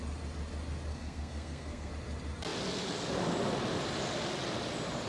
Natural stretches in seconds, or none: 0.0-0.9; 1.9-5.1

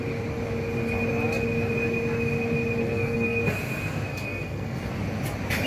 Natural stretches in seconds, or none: 0.0-2.8; 3.4-4.1; 4.9-5.7